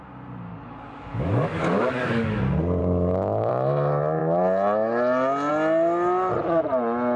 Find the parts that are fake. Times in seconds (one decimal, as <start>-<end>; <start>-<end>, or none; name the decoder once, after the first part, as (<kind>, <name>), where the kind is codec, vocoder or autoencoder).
0.5-2.4 (codec, DAC); 2.8-3.5